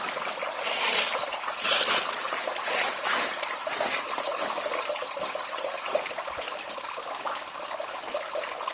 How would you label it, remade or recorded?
recorded